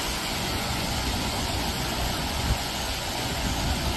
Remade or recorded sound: remade